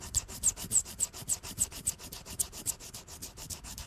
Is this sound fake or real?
fake